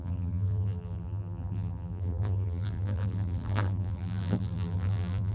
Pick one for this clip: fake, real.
fake